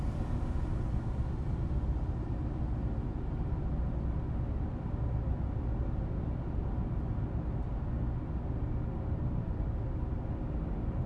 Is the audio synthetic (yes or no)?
no